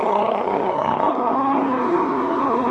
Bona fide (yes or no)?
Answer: no